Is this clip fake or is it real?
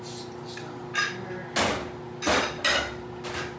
real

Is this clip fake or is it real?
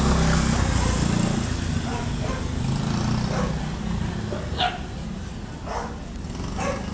real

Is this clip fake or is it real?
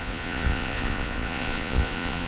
fake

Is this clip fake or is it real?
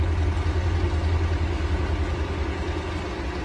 real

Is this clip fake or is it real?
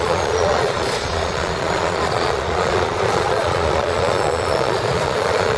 fake